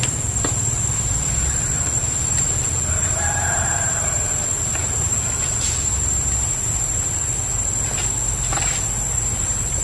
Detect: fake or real fake